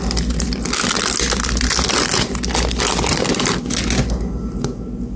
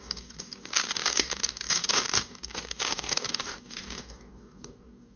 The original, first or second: first